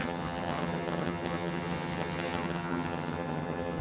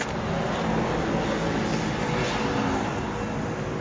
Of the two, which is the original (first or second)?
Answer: second